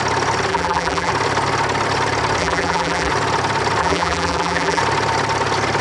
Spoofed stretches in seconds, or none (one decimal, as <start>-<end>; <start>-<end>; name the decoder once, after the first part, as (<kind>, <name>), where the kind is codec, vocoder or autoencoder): 0.5-1.1 (vocoder, BigVGAN v2); 2.4-3.1; 3.8-4.8